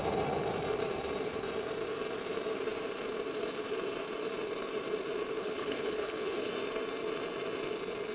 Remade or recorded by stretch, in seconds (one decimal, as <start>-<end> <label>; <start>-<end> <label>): 0.0-5.4 recorded; 5.4-6.5 remade; 6.5-8.1 recorded